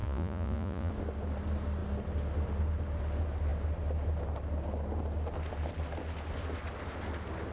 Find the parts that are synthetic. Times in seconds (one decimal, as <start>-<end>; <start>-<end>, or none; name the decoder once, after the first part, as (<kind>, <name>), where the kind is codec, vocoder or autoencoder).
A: 0.0-0.9 (vocoder, Vocos)

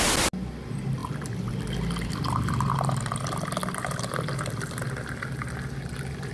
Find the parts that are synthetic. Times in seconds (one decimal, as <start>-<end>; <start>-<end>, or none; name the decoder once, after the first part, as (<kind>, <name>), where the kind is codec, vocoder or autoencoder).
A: 3.6-4.8 (vocoder, BigVGAN v2)